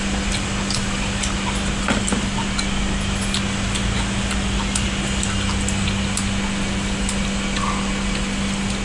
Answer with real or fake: real